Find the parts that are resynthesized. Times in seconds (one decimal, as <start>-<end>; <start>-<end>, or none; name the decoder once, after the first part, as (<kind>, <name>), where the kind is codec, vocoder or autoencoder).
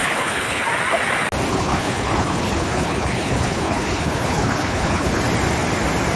0.0-0.6 (codec, HILCodec); 1.5-5.2